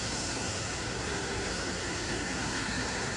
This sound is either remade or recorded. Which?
remade